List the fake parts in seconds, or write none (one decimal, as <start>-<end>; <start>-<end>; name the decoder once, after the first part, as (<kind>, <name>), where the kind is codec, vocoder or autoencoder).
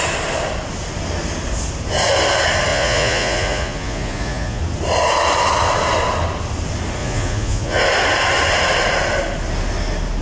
2.7-4.6 (vocoder, Vocos); 7.0-7.8